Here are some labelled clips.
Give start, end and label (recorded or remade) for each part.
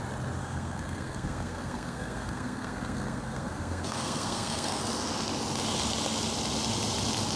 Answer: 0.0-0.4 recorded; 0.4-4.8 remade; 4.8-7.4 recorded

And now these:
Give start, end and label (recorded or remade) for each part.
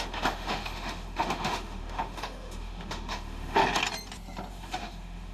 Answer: 0.0-3.6 remade; 3.6-4.5 recorded; 4.5-5.3 remade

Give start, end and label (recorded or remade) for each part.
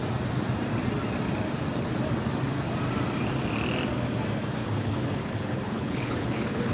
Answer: 0.0-4.6 recorded; 4.6-6.7 remade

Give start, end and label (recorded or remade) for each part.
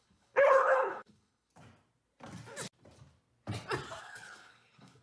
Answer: 0.0-1.5 remade; 1.5-4.0 recorded; 4.0-5.0 remade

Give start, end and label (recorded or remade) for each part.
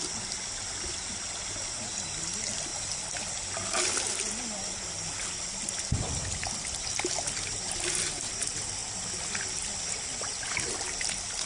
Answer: 0.0-11.5 recorded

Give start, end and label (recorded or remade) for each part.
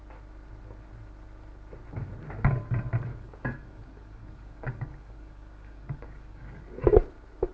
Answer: 0.0-3.1 recorded; 3.1-6.6 remade; 6.6-7.5 recorded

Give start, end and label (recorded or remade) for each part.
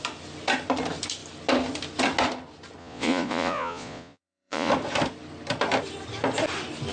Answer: 0.0-2.8 recorded; 2.8-4.7 remade; 4.7-6.9 recorded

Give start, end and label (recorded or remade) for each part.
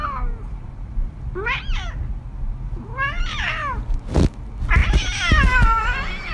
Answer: 0.0-6.3 recorded